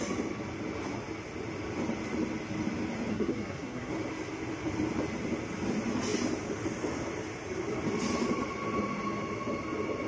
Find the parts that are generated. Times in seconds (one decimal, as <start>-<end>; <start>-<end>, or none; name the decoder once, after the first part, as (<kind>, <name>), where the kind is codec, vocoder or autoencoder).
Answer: 3.1-3.9 (codec, SNAC)

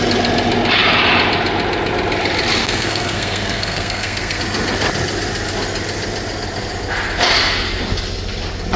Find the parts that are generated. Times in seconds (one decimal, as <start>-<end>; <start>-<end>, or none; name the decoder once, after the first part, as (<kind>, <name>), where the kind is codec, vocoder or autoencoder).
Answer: 2.6-4.4 (codec, SNAC)

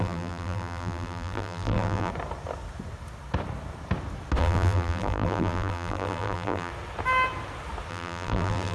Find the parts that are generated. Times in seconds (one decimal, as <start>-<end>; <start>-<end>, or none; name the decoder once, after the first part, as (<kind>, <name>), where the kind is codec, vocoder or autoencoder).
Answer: 0.0-2.1 (vocoder, BigVGAN v2); 4.4-6.7; 7.9-8.7